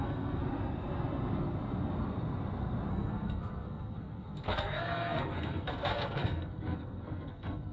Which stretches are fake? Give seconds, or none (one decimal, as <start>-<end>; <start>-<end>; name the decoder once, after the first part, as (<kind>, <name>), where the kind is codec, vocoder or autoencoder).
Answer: 0.0-0.4 (codec, SNAC); 2.9-7.7